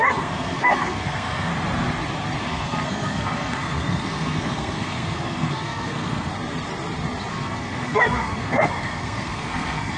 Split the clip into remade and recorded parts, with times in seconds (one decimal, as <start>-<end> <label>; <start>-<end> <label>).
0.0-1.5 remade; 1.5-2.4 recorded; 2.4-6.3 remade; 6.3-7.3 recorded; 7.3-10.0 remade